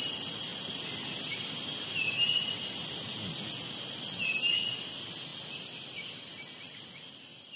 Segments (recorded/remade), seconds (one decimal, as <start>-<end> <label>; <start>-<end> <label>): 0.0-7.6 recorded